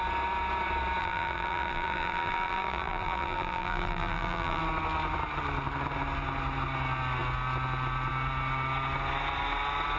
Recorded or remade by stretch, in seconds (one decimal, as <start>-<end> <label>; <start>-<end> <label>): 0.0-1.0 recorded; 1.0-4.6 remade; 4.6-10.0 recorded